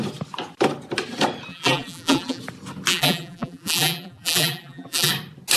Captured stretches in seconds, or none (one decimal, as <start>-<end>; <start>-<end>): 0.0-1.5; 2.4-2.9; 5.1-5.6